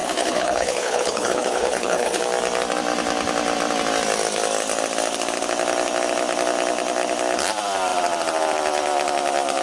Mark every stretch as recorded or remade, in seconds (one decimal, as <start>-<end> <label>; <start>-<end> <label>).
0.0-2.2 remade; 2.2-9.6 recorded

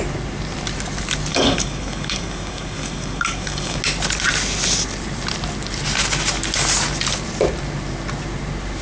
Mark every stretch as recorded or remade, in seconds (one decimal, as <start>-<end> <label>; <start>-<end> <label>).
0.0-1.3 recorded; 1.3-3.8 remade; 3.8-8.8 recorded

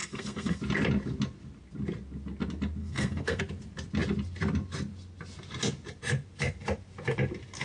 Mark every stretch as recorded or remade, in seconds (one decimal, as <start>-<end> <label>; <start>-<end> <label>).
0.0-0.6 remade; 0.6-2.8 recorded; 2.8-3.4 remade; 3.4-7.6 recorded

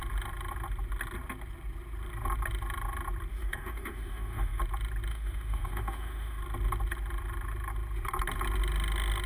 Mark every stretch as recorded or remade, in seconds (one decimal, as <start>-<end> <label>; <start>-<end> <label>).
0.0-3.3 recorded; 3.3-4.6 remade; 4.6-5.1 recorded; 5.1-6.4 remade; 6.4-9.3 recorded

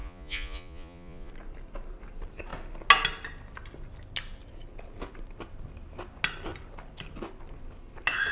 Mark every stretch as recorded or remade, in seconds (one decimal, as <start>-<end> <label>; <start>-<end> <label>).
0.0-1.3 remade; 1.3-8.3 recorded